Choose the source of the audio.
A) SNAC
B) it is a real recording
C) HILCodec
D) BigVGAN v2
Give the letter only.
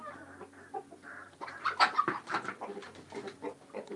B